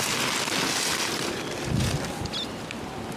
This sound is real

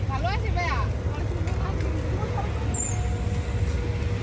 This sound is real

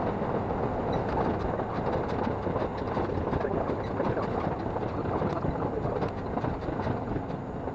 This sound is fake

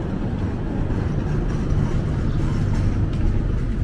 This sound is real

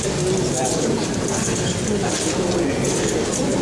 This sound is real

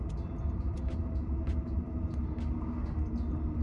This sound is real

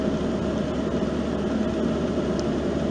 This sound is real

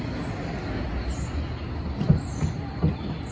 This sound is real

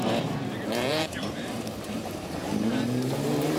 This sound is fake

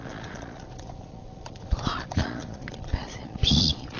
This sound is fake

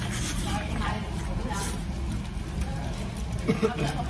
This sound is real